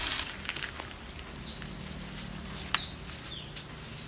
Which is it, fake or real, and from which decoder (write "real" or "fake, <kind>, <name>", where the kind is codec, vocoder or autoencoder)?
real